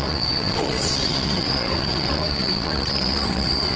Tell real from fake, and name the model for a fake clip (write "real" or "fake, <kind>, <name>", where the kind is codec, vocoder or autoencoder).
fake, vocoder, WaveNeXt